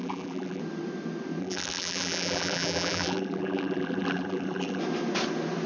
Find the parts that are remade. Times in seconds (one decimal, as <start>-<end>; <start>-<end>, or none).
0.0-0.6; 1.4-4.8